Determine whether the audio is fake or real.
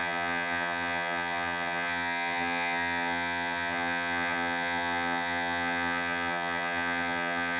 fake